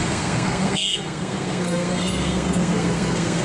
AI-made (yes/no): yes